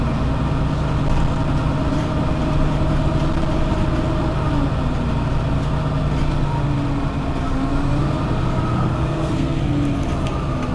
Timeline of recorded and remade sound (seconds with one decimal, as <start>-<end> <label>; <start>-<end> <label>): 0.0-8.7 recorded; 8.7-9.6 remade; 9.6-10.7 recorded